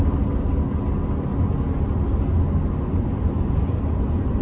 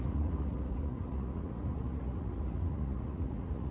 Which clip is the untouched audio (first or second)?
first